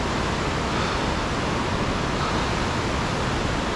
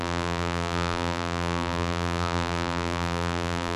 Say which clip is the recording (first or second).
first